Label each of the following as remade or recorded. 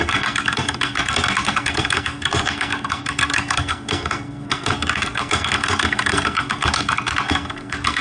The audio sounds remade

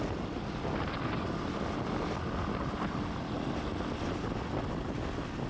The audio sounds recorded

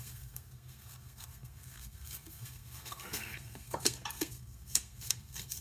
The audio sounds remade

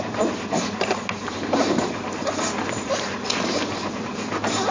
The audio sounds recorded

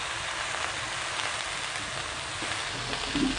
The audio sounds recorded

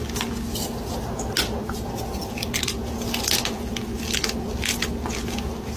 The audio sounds recorded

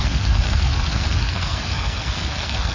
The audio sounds remade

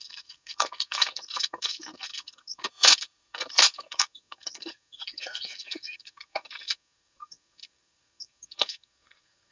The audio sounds remade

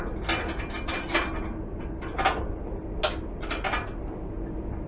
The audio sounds recorded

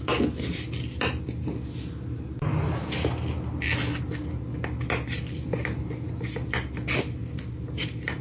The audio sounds recorded